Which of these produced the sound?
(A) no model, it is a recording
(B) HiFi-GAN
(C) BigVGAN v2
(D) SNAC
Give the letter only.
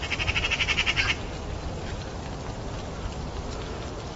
A